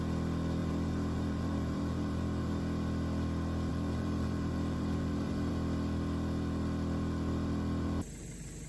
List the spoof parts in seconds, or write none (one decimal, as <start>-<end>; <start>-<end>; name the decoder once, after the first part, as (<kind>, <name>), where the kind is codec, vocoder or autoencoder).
0.6-2.6 (vocoder, BigVGAN v2); 3.7-5.5